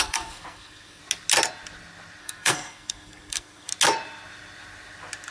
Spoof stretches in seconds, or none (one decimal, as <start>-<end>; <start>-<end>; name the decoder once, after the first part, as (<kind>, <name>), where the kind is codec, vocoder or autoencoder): 0.0-1.0 (codec, SNAC); 2.2-3.7